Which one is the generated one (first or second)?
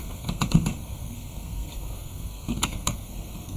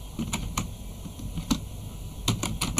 first